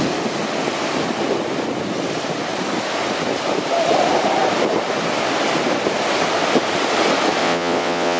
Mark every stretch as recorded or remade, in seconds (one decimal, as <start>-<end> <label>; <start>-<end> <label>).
0.0-7.4 recorded; 7.4-8.2 remade